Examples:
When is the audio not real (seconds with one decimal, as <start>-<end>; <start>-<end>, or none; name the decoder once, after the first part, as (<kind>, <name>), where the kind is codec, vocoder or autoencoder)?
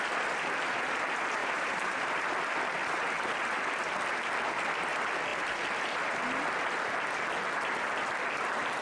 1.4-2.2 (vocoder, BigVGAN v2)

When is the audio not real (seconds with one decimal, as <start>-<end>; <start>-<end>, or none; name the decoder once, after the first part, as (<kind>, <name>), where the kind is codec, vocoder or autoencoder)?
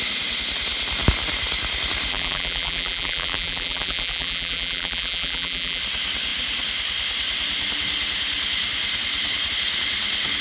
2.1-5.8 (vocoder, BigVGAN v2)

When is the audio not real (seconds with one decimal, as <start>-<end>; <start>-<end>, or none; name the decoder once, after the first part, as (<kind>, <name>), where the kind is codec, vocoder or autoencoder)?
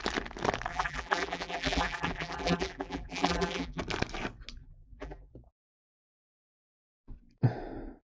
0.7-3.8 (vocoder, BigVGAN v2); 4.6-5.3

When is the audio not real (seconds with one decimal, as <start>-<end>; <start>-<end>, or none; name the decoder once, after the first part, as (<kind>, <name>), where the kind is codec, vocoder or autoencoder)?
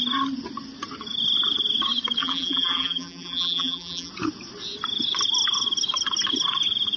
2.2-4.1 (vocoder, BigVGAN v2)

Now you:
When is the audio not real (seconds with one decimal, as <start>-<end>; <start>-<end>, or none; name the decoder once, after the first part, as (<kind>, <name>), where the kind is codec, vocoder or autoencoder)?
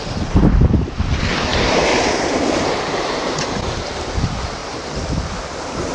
1.5-3.5 (vocoder, BigVGAN v2); 4.6-5.2